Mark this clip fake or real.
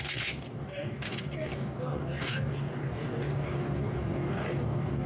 fake